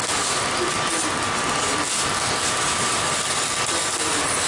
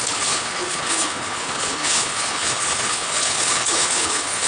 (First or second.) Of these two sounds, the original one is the first